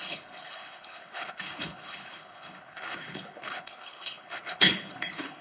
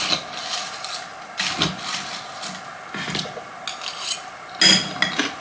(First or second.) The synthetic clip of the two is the first